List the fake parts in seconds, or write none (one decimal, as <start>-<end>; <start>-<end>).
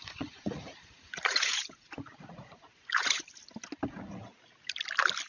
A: 0.0-3.2